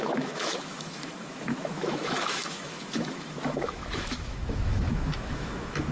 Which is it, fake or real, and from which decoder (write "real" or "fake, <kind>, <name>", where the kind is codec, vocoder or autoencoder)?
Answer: fake, autoencoder, DAC-VAE